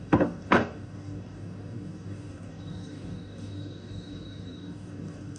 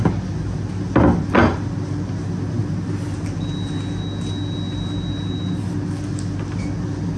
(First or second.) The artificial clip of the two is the first